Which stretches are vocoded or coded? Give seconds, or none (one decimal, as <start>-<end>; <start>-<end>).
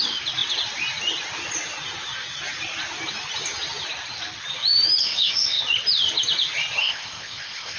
5.0-5.6; 6.8-7.8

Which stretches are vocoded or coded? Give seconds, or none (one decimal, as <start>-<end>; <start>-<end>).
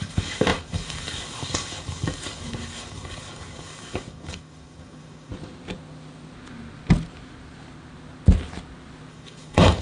0.0-5.3; 9.1-9.8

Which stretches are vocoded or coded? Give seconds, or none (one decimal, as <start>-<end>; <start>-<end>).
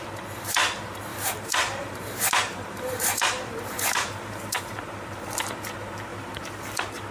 1.1-4.6; 6.1-6.6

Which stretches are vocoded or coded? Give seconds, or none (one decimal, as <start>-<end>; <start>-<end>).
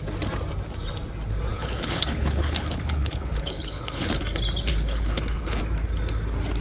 1.5-4.2; 4.7-5.6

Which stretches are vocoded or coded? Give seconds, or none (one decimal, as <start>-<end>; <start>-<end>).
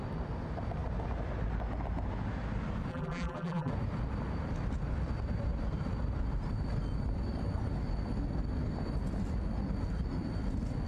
2.9-3.7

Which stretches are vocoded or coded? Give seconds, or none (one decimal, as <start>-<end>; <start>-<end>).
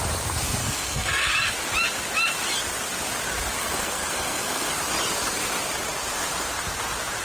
0.6-1.3; 3.6-4.7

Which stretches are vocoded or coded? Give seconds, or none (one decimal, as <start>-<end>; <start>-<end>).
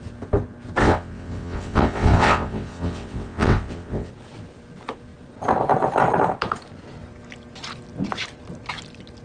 0.8-4.1